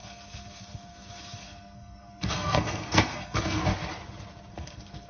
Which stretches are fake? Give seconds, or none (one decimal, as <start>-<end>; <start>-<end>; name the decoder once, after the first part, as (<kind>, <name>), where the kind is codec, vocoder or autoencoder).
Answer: 0.0-3.6 (codec, SNAC); 4.5-5.1